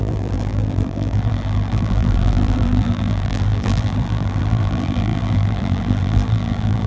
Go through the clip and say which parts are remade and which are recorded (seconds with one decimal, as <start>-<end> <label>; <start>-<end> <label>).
0.0-6.9 remade